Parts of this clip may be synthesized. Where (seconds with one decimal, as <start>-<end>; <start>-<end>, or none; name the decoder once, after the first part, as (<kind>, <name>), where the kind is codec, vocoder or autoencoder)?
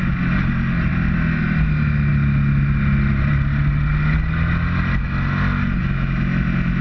none